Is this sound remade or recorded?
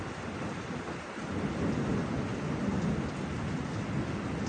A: recorded